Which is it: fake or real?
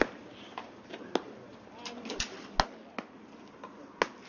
real